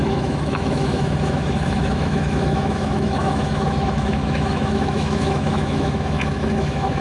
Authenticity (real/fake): fake